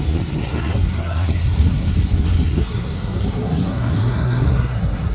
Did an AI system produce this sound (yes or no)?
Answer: yes